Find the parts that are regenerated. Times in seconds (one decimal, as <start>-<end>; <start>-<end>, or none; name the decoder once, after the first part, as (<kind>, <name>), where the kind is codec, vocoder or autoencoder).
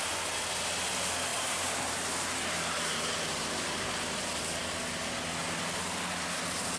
1.3-4.0 (vocoder, BigVGAN v2)